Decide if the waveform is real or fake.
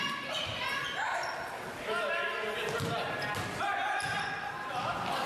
real